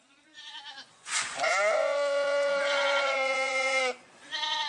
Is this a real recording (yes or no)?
no